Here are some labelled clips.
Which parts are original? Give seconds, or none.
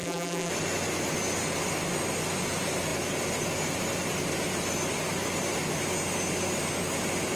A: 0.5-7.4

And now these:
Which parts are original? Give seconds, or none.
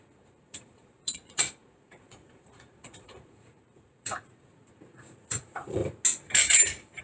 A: 5.8-7.0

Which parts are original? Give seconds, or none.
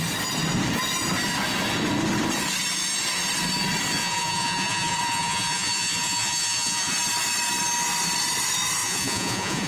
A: 0.0-4.0; 6.9-8.8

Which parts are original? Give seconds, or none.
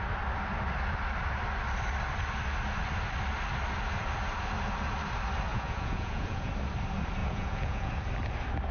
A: 0.0-5.5; 6.5-7.2; 7.9-8.7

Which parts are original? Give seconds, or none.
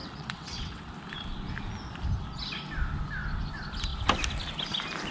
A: 0.8-5.1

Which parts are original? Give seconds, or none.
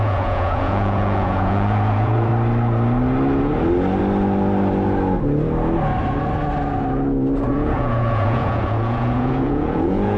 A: 2.3-7.5